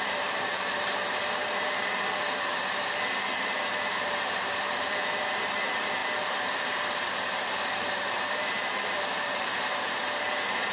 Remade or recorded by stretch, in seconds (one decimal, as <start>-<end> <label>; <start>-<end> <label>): 0.0-10.7 remade